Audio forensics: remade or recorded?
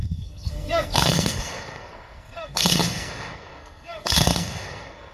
remade